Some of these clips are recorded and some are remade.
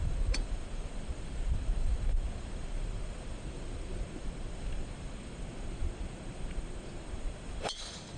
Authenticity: remade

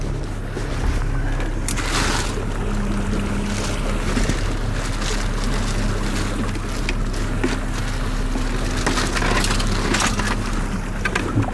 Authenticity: recorded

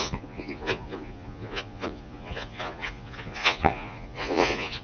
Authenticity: remade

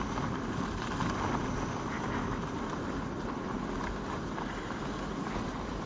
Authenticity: recorded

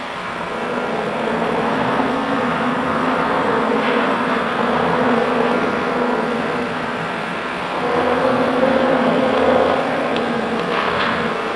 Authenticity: remade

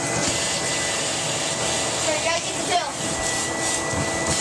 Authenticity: recorded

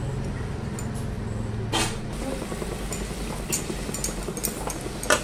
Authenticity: recorded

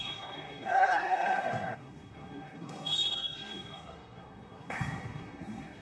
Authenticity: remade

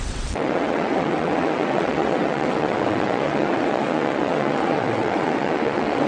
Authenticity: remade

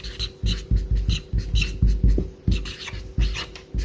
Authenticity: recorded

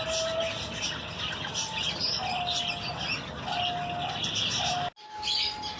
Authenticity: recorded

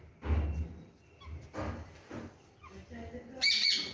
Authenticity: recorded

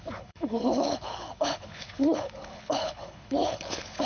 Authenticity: remade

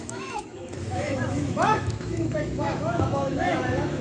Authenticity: remade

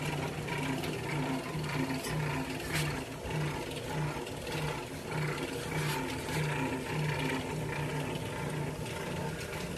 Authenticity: recorded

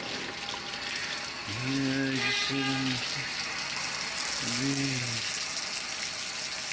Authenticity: recorded